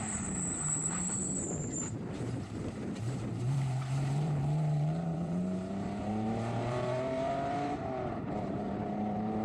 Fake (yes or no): yes